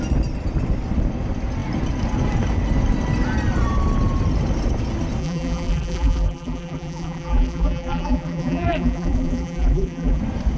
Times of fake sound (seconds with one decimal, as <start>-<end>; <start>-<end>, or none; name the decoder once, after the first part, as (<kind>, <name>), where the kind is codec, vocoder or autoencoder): 5.2-10.2 (vocoder, BigVGAN v2)